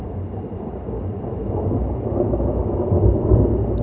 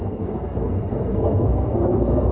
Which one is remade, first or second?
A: second